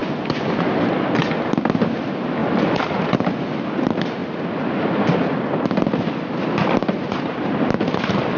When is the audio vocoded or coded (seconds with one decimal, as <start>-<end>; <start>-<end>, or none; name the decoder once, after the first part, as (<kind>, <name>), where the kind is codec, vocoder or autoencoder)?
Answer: 0.0-0.7 (vocoder, Vocos)